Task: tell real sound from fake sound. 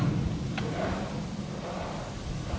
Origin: real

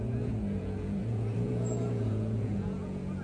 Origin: fake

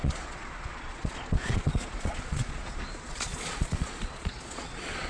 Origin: fake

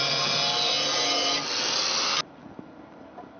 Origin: real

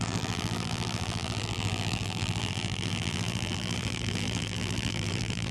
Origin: fake